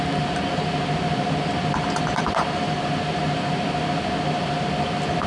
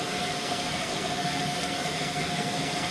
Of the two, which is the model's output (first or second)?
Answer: second